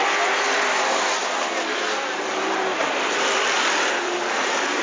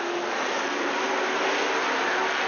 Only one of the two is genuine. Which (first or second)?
second